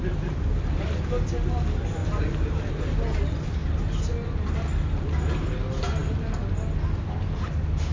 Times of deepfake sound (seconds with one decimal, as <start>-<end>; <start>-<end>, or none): 2.0-2.7